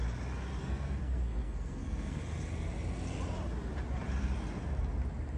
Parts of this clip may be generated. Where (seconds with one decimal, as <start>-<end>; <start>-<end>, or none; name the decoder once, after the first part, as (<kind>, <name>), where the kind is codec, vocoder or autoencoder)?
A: 0.6-2.2 (codec, SNAC)